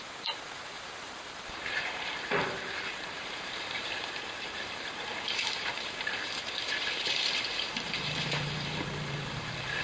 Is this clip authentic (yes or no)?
no